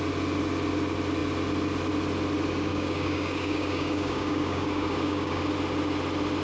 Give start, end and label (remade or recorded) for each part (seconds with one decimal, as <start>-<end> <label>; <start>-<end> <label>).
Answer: 0.0-2.7 recorded; 2.7-5.4 remade; 5.4-6.4 recorded